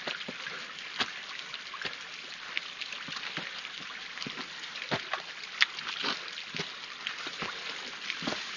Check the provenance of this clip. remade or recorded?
recorded